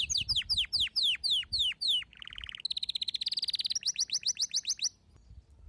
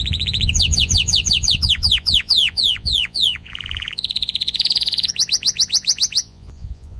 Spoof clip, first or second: second